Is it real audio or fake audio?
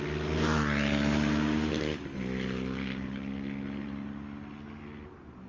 real